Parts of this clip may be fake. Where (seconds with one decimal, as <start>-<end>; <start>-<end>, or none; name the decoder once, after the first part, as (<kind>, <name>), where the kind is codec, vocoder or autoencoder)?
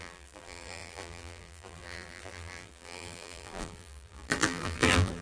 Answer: 0.0-5.2 (vocoder, BigVGAN v2)